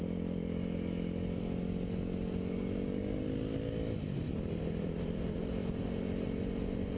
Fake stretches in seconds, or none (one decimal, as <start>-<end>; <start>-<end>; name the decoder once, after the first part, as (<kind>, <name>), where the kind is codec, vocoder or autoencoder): 0.0-0.6 (vocoder, BigVGAN v2); 4.8-5.6; 6.6-7.0